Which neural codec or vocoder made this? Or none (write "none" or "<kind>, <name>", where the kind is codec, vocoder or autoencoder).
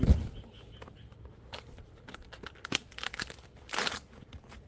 none